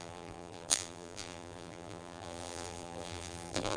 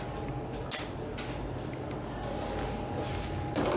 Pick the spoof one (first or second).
first